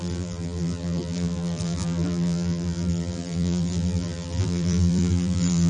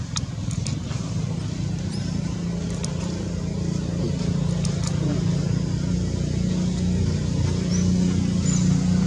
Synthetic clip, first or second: first